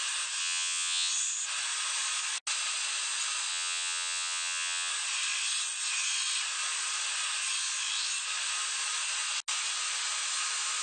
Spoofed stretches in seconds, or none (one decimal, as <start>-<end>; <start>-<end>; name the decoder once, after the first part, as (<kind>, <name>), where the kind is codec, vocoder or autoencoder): 0.4-1.1 (vocoder, WaveNeXt); 3.5-4.9